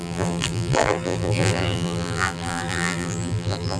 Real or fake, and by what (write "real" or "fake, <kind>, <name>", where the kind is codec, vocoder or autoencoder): fake, vocoder, BigVGAN v2